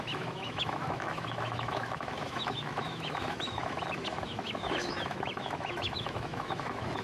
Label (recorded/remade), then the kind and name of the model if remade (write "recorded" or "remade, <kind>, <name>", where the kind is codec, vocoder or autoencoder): remade, autoencoder, DAC-VAE